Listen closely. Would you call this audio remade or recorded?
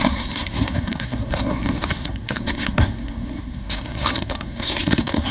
remade